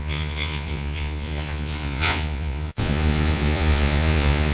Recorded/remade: remade